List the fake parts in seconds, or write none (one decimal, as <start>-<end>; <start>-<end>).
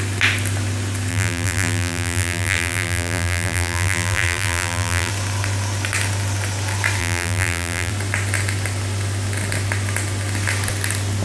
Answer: 1.1-5.1; 7.0-7.9